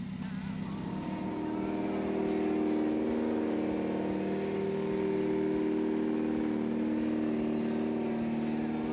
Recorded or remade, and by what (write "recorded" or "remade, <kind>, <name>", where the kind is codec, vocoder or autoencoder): recorded